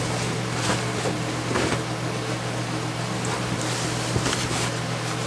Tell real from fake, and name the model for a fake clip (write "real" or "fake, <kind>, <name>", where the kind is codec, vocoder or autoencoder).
real